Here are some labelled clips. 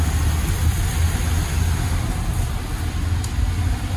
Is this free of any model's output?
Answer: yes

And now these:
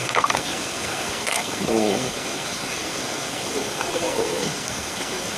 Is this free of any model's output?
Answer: no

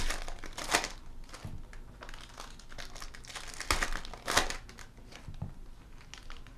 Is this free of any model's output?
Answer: yes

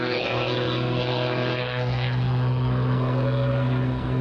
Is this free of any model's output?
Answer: no